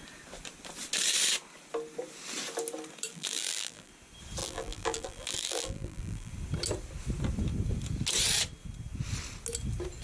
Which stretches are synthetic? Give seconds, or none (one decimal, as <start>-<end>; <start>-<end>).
3.1-3.9; 4.4-6.3